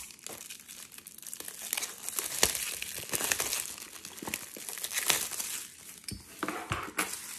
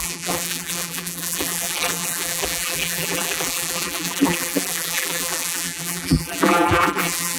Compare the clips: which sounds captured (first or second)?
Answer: first